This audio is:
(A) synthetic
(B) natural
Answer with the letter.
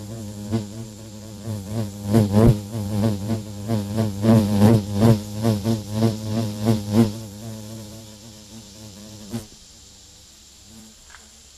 A